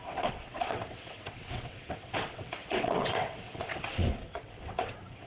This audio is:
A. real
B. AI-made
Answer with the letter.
B